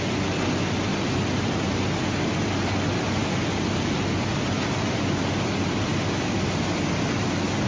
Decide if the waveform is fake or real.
real